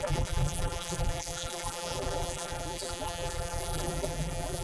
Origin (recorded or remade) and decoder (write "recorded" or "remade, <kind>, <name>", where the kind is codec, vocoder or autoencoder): remade, vocoder, BigVGAN v2